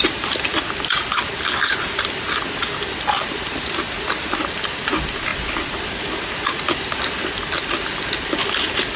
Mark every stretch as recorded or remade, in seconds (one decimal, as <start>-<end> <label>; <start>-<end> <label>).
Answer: 0.0-9.0 recorded